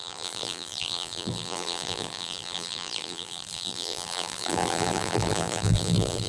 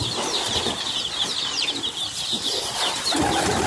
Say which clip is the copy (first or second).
first